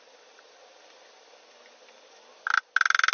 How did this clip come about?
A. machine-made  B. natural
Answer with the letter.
B